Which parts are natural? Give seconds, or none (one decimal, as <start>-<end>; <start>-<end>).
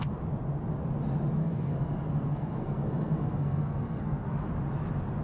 0.0-1.4; 4.5-5.2